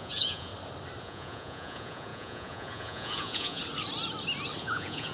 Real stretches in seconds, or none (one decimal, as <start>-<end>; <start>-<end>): 0.5-1.0; 3.6-4.6